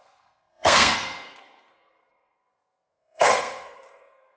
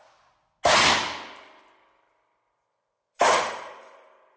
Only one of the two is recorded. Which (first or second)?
second